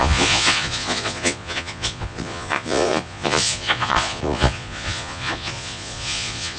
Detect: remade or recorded remade